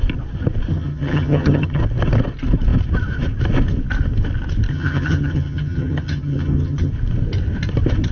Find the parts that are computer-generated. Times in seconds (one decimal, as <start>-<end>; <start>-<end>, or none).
0.7-1.8; 4.7-6.9